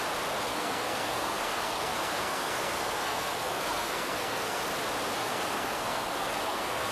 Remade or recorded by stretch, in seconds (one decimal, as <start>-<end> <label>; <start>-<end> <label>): 0.0-0.5 recorded; 0.5-4.6 remade; 4.6-5.2 recorded; 5.2-6.9 remade